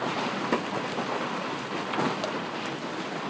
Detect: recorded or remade remade